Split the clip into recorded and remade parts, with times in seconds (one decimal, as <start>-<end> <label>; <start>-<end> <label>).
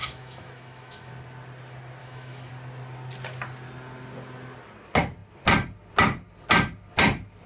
0.0-1.1 remade; 1.1-2.0 recorded; 2.0-2.5 remade; 2.5-7.5 recorded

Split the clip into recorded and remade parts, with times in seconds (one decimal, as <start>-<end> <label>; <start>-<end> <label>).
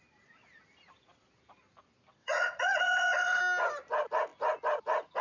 0.0-2.2 recorded; 2.2-3.4 remade; 3.4-5.2 recorded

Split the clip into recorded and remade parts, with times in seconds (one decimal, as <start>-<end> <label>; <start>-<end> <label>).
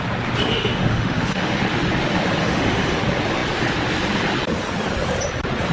0.0-0.5 recorded; 0.5-1.6 remade; 1.6-2.4 recorded; 2.4-3.0 remade; 3.0-5.7 recorded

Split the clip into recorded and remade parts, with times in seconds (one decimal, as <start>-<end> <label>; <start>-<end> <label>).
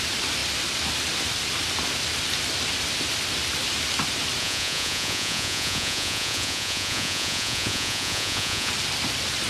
0.0-4.4 recorded; 4.4-8.7 remade; 8.7-9.5 recorded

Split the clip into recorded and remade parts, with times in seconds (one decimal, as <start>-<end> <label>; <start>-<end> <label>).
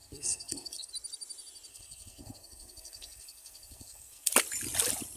0.0-0.9 remade; 0.9-1.7 recorded; 1.7-4.3 remade; 4.3-5.2 recorded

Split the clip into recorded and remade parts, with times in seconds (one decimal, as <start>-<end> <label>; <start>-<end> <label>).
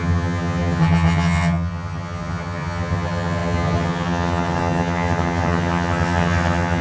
0.0-6.8 remade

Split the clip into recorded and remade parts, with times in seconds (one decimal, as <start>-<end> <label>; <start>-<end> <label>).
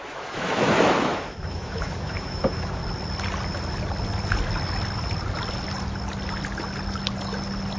0.0-2.8 remade; 2.8-7.8 recorded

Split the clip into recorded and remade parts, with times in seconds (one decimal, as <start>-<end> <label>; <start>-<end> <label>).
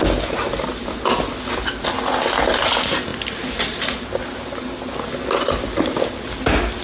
0.0-6.8 recorded